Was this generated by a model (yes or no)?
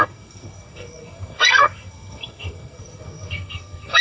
yes